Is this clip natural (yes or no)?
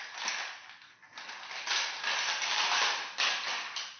yes